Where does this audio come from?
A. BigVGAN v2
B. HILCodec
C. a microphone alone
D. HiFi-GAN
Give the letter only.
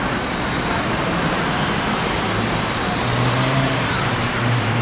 A